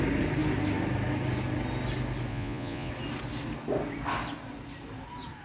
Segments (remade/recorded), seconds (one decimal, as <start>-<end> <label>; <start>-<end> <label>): 0.0-2.3 recorded; 2.3-2.9 remade; 2.9-5.4 recorded